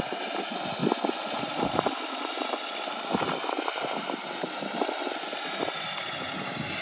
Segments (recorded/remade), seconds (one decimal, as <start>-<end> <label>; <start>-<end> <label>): 0.0-6.8 recorded